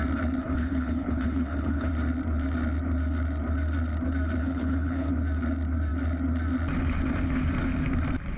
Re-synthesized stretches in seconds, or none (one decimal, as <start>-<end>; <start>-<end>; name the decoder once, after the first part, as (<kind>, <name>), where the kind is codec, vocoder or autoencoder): 0.4-1.9 (codec, HILCodec); 4.4-5.1